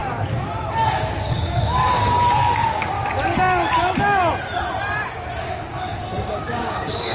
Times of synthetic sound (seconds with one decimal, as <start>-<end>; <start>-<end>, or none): 0.7-3.0; 5.4-7.1